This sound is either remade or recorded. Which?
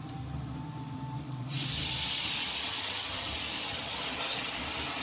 remade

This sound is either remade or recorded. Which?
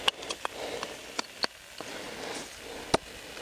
recorded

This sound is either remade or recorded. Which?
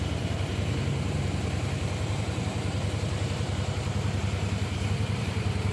remade